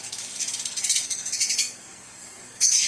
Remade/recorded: remade